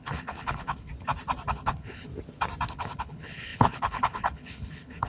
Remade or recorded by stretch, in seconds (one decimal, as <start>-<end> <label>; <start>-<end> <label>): 0.0-0.9 remade; 0.9-1.5 recorded; 1.5-2.1 remade; 2.1-2.7 recorded; 2.7-5.1 remade